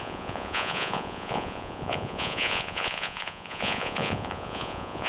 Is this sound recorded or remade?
remade